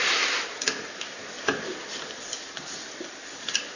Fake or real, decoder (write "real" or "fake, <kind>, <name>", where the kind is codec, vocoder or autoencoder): real